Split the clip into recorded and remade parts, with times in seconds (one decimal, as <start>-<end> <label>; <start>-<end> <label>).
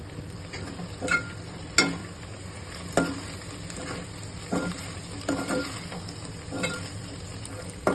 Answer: 0.0-2.0 recorded; 2.0-2.7 remade; 2.7-7.9 recorded